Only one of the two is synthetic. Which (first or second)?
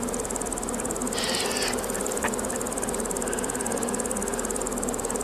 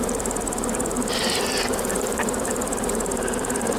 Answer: second